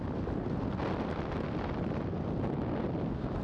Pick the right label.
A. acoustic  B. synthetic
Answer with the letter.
A